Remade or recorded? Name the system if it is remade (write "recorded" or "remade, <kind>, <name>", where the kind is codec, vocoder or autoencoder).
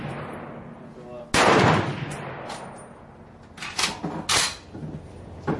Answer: recorded